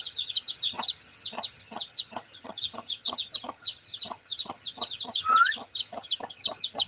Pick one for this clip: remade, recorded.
remade